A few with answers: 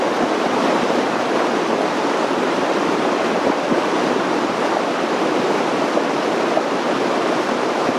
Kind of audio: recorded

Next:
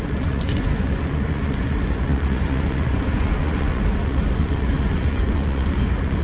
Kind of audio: remade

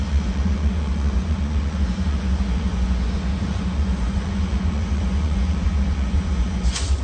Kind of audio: remade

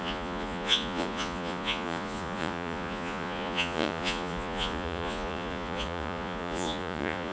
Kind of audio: remade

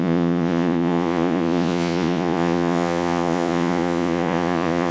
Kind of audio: remade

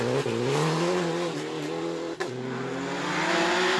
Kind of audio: recorded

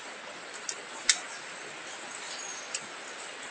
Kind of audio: recorded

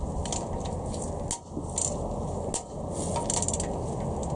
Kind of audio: recorded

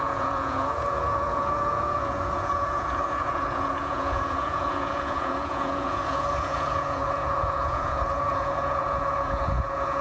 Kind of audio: remade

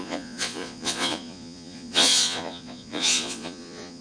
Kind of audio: remade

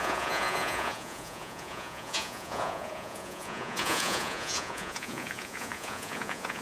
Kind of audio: remade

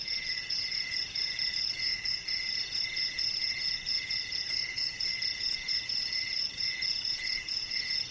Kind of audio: remade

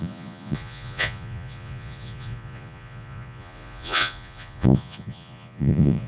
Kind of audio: remade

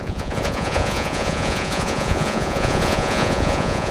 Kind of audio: remade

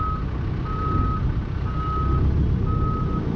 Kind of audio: recorded